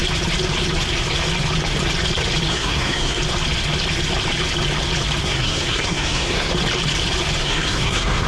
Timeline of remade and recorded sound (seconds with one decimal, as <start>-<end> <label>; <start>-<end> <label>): 0.0-2.5 recorded; 2.5-3.2 remade; 3.2-5.2 recorded; 5.2-6.5 remade; 6.5-7.4 recorded; 7.4-8.3 remade